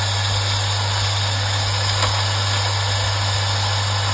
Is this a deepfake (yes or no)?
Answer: no